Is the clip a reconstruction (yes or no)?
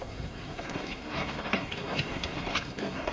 yes